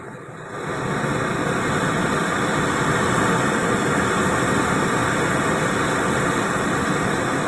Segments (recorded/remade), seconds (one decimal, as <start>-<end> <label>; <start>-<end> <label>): 0.0-7.5 recorded